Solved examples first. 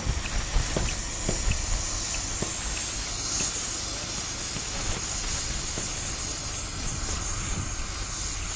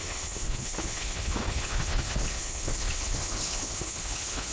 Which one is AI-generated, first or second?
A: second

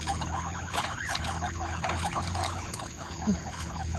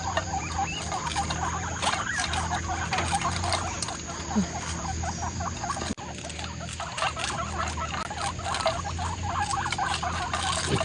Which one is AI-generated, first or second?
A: first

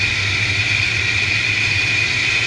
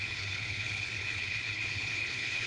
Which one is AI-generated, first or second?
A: second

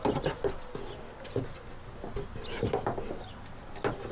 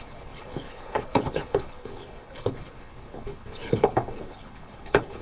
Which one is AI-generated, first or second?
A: second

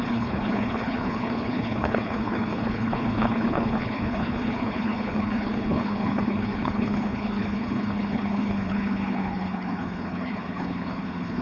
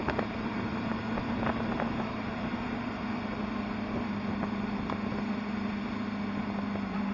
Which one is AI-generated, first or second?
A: first